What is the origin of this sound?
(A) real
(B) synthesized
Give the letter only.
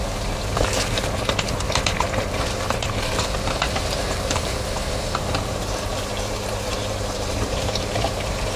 B